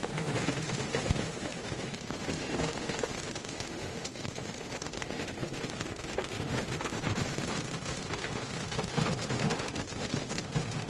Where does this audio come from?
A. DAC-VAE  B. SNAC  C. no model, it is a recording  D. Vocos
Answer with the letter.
A